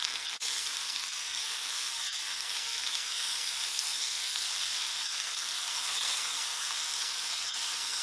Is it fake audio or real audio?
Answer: fake